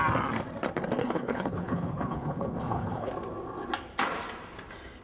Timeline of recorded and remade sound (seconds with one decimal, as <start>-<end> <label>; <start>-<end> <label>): 0.0-1.0 recorded; 1.0-3.1 remade; 3.1-5.0 recorded